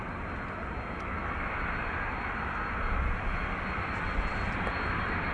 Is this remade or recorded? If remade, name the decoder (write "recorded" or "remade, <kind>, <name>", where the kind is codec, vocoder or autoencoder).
recorded